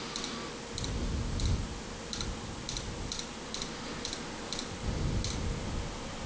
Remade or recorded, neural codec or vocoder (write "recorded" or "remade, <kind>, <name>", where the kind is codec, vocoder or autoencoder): recorded